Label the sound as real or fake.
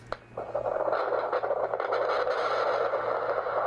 real